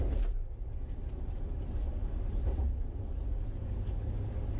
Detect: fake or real real